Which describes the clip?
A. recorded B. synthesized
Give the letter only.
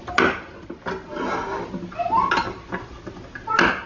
A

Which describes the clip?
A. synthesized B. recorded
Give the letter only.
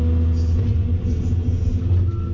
B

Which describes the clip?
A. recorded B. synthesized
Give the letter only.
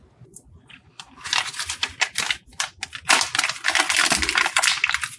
A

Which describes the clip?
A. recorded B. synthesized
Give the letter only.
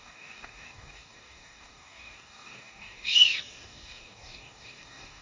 B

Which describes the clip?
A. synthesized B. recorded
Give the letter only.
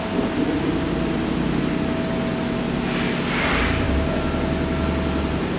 B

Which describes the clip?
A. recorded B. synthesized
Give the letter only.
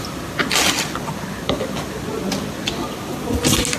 A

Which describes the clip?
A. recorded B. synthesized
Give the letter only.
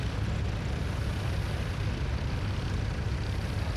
A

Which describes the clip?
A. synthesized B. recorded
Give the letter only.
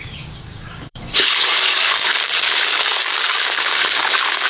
A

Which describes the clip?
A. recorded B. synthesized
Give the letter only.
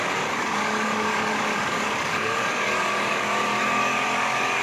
B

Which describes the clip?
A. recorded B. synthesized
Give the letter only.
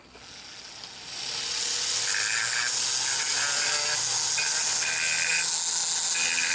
A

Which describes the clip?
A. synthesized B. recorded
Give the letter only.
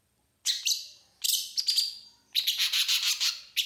B